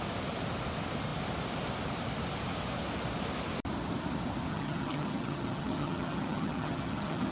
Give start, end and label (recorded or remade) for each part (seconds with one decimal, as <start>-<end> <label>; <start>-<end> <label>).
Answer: 0.0-4.5 recorded; 4.5-7.3 remade